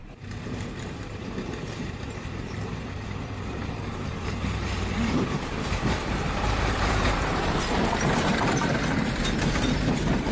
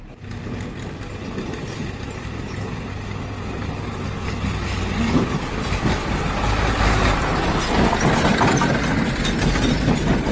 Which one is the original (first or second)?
second